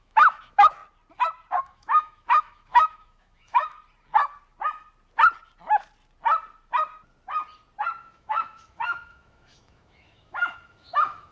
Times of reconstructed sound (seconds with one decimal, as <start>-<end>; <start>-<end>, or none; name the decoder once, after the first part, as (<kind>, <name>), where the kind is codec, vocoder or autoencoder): 0.0-0.8 (autoencoder, DAC-VAE); 1.6-3.7; 8.0-11.3